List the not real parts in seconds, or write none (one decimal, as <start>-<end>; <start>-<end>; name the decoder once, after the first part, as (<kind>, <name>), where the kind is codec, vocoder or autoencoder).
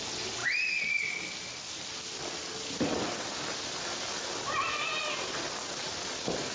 none